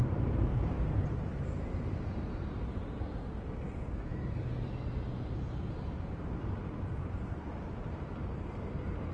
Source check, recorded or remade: remade